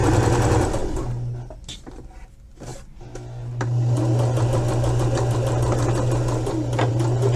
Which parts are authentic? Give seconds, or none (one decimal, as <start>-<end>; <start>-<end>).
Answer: 0.0-7.4